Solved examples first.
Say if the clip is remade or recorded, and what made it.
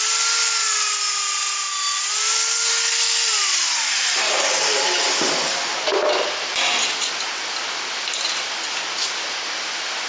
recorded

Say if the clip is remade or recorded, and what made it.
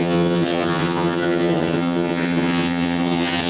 remade, vocoder, HiFi-GAN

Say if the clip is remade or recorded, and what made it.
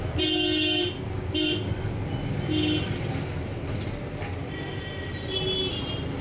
recorded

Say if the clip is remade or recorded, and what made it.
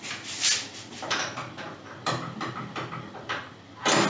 recorded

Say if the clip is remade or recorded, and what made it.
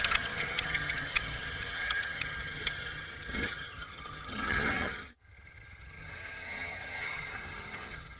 remade, vocoder, HiFi-GAN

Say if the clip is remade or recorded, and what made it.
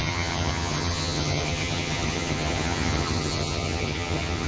remade, vocoder, HiFi-GAN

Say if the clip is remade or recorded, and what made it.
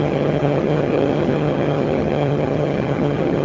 remade, vocoder, HiFi-GAN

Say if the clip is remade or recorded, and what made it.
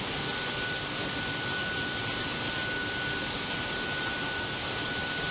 recorded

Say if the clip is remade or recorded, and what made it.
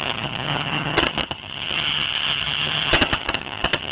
remade, vocoder, HiFi-GAN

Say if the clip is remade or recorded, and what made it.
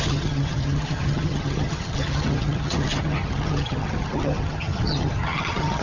remade, vocoder, HiFi-GAN